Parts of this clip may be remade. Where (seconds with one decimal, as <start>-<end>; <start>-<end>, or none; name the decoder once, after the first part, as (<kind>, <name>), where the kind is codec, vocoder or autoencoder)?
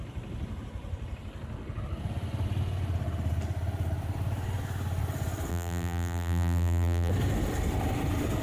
5.5-7.1 (vocoder, BigVGAN v2)